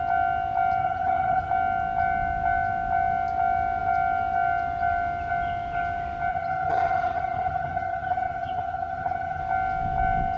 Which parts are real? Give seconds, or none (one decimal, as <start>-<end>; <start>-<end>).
0.0-0.8; 1.5-6.3; 9.4-10.4